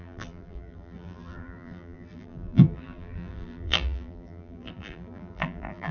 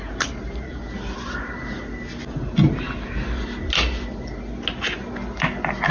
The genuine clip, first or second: second